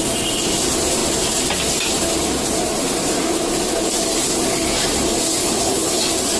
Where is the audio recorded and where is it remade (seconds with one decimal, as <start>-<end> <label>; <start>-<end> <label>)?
0.0-5.4 recorded; 5.4-6.0 remade; 6.0-6.4 recorded